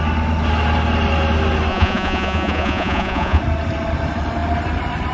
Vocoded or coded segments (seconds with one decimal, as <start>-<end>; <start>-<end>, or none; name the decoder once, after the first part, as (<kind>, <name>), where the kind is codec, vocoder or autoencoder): 1.7-3.4 (vocoder, Vocos)